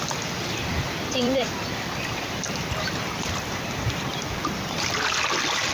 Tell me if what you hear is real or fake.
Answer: fake